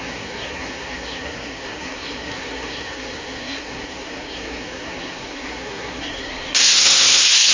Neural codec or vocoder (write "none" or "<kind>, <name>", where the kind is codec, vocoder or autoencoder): codec, SNAC